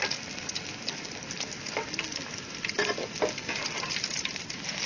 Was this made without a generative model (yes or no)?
yes